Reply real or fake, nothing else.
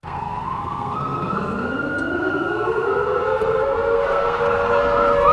fake